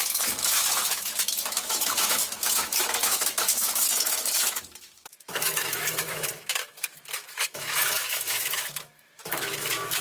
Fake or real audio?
fake